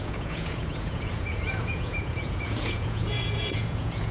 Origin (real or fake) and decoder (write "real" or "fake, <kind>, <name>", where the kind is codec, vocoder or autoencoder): fake, vocoder, Vocos